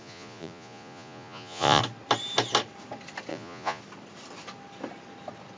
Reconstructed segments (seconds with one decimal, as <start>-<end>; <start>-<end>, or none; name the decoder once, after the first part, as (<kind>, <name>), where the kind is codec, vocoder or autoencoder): 0.0-1.8 (vocoder, Vocos); 3.3-3.8